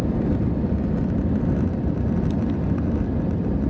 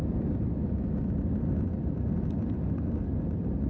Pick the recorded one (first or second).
second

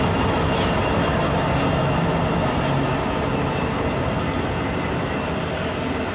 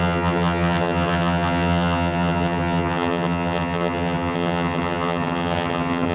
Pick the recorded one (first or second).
first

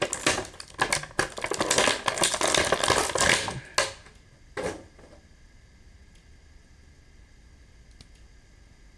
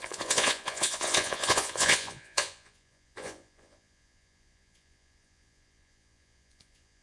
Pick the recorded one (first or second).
first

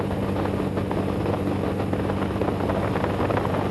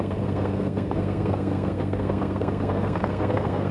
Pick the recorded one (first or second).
first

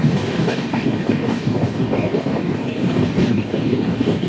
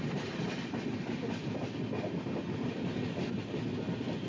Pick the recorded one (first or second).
second